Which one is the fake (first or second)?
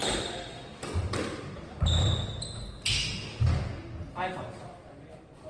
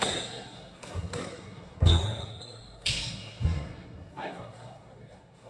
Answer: second